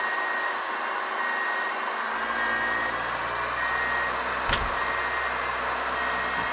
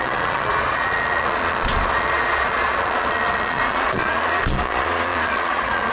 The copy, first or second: second